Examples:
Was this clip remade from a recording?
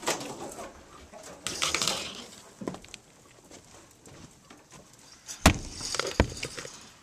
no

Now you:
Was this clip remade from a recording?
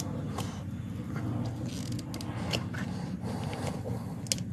no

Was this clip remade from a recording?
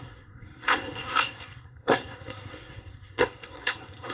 yes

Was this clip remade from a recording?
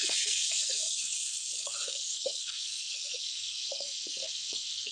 yes